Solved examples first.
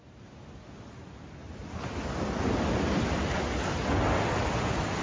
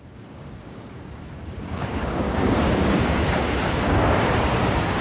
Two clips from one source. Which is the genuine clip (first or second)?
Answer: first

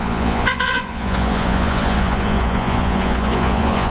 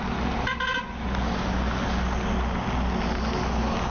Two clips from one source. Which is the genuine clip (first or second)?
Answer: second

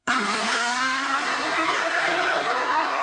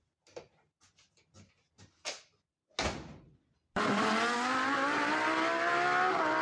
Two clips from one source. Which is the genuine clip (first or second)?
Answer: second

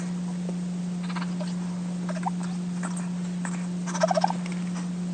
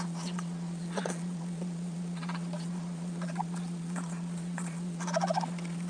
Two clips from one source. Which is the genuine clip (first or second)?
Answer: first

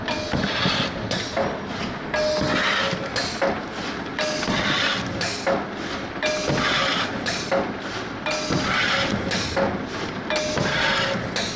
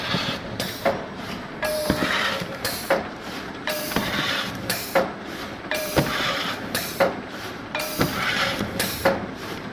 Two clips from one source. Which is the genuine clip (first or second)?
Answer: first